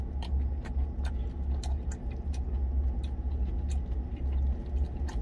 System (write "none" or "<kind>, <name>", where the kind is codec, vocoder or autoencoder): none